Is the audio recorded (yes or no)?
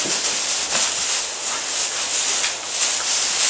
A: yes